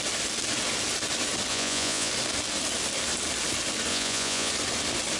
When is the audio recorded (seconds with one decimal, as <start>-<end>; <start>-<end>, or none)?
0.0-1.5; 2.1-3.9; 4.5-5.2